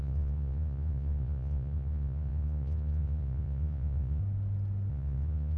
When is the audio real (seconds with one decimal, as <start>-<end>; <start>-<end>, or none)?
4.2-4.9